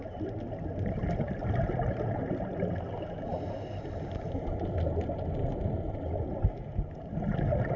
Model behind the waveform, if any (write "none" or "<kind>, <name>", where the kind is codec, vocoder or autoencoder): none